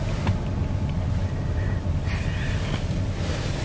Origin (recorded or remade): recorded